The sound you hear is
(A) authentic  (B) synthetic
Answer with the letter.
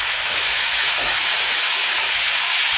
B